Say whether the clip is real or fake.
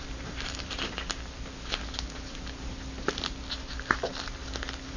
real